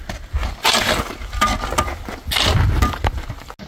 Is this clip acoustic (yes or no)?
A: yes